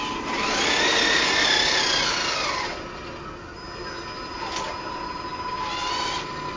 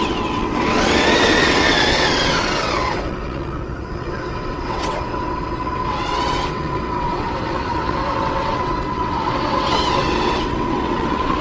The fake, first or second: second